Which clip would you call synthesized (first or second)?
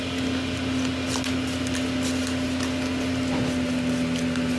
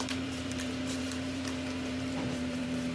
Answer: second